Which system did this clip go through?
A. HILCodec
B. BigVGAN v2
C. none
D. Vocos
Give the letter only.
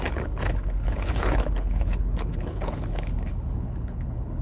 A